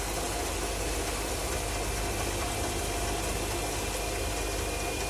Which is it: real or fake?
real